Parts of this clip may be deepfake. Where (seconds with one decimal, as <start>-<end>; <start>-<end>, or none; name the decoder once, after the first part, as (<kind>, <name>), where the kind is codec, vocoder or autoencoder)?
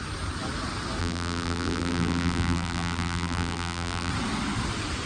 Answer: 1.0-4.1 (vocoder, BigVGAN v2)